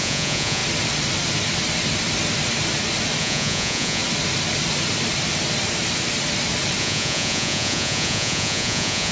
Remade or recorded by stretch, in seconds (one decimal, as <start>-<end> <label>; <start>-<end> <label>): 0.0-0.6 remade; 0.6-3.2 recorded; 3.2-4.0 remade; 4.0-6.8 recorded; 6.8-9.1 remade